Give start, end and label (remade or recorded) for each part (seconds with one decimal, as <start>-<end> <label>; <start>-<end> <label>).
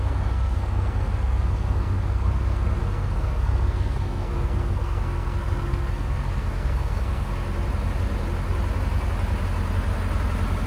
0.0-7.3 remade; 7.3-10.7 recorded